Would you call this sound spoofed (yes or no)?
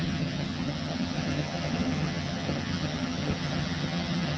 yes